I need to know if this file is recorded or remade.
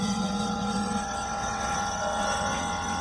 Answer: remade